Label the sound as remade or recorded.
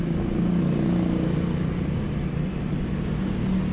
recorded